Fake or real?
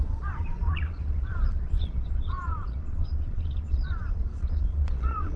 fake